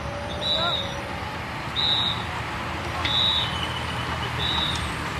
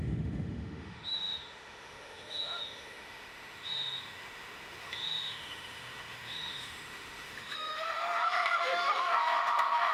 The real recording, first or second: first